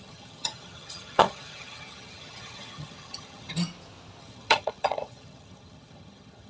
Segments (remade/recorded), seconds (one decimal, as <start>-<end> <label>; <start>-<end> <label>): 0.0-3.6 remade; 3.6-4.2 recorded; 4.2-6.5 remade